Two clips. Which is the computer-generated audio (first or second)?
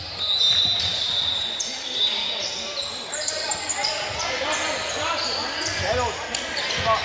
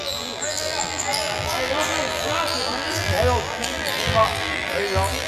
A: second